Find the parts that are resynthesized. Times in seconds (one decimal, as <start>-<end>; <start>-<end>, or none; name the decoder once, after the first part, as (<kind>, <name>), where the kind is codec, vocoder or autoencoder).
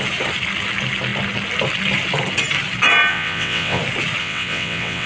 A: 3.1-3.8 (vocoder, WaveNeXt); 4.2-5.1